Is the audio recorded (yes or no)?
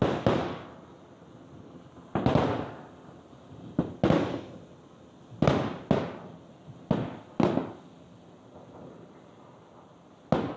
yes